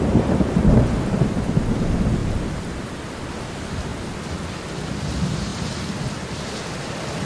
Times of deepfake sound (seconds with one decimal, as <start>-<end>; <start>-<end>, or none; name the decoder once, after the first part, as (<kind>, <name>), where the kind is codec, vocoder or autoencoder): 0.6-1.5 (vocoder, BigVGAN v2); 2.2-3.3